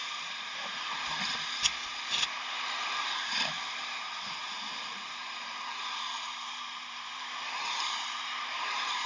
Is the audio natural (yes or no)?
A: no